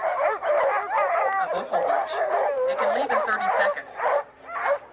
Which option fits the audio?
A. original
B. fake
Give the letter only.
B